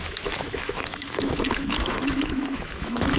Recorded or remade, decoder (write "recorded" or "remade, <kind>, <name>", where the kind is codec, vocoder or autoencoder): remade, autoencoder, DAC-VAE